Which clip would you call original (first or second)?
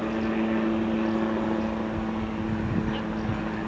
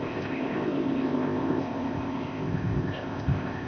first